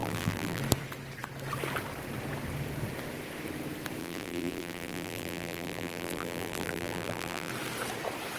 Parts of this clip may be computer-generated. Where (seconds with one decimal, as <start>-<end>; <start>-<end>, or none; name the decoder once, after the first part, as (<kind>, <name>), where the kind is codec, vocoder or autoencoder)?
0.0-0.6 (vocoder, BigVGAN v2); 4.0-7.5